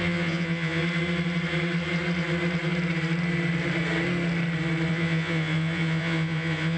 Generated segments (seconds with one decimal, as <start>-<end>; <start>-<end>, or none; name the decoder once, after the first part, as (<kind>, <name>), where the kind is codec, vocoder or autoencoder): 0.0-0.8 (vocoder, Vocos); 4.9-6.8